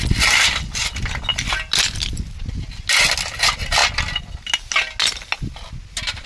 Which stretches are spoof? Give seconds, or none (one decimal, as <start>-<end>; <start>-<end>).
none